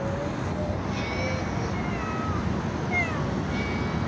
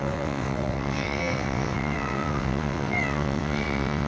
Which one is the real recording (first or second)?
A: first